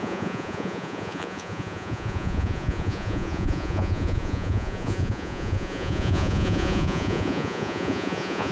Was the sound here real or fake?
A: fake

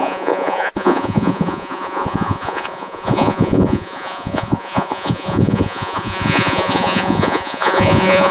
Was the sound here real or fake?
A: fake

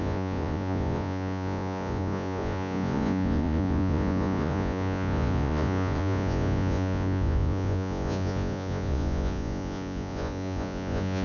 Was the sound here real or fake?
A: fake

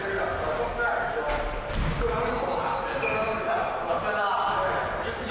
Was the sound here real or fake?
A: real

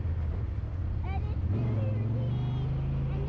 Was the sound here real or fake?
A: real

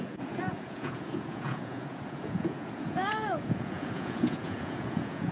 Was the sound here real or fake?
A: fake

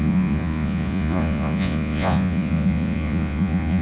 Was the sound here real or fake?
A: fake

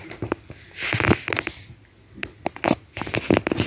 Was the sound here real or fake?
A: real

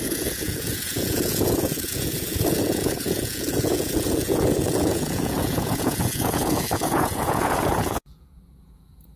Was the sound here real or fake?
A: fake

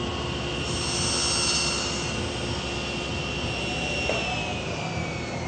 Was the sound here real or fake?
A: real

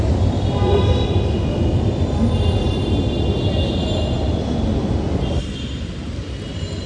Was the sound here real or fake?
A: real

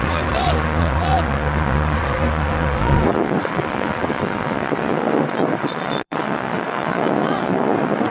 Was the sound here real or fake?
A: fake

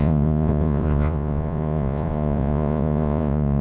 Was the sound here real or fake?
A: fake